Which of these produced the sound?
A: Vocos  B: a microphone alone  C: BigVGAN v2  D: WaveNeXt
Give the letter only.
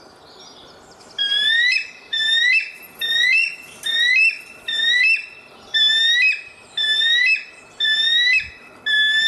B